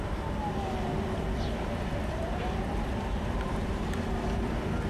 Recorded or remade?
remade